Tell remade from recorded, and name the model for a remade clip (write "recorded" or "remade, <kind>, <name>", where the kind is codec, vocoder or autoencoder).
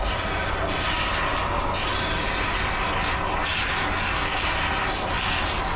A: recorded